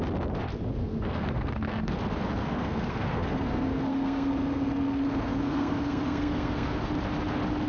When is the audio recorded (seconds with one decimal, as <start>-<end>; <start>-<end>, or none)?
0.0-0.8; 2.0-2.4; 6.9-7.7